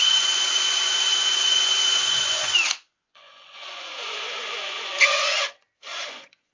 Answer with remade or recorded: remade